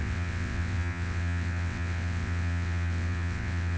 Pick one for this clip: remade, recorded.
remade